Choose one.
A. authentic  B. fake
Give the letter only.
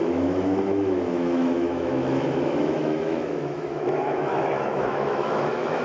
B